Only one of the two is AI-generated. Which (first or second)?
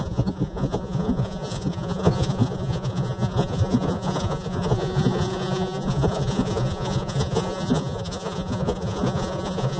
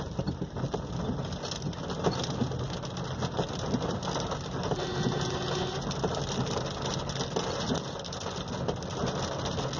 first